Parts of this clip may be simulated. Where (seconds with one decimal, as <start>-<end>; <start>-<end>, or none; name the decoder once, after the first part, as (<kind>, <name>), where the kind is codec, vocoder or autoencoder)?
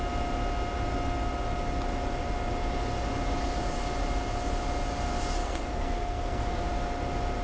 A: 5.4-6.6 (codec, SNAC)